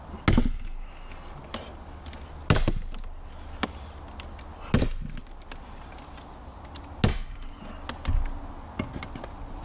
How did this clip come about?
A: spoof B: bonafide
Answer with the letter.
B